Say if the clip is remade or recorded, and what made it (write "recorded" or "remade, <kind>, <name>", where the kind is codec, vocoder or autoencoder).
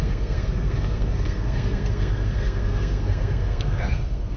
remade, codec, SNAC